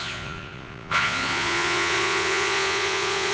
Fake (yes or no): yes